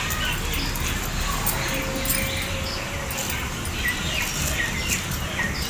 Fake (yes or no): no